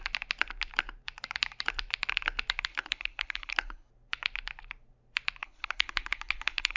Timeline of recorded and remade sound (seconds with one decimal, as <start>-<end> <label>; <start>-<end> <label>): 0.0-2.7 recorded; 2.7-3.9 remade; 3.9-5.4 recorded; 5.4-6.8 remade